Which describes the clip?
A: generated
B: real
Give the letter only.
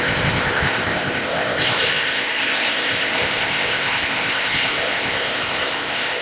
A